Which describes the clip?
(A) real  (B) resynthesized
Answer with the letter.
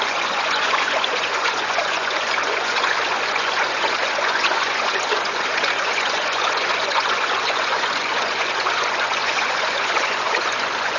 B